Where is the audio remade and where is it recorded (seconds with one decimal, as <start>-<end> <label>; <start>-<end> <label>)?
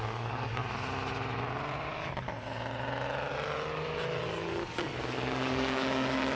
0.0-0.6 remade; 0.6-4.4 recorded; 4.4-6.4 remade